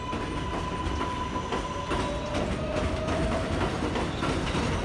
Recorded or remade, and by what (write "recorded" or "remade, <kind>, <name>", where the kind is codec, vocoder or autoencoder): recorded